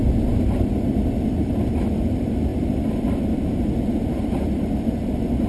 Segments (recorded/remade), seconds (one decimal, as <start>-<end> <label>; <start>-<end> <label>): 0.0-5.5 recorded